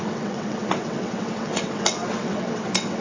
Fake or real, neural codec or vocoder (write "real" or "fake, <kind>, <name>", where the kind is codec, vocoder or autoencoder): fake, vocoder, WaveNeXt